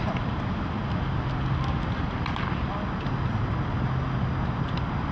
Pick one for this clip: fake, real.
real